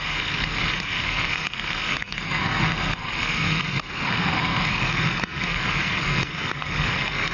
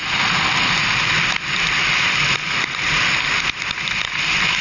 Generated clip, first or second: first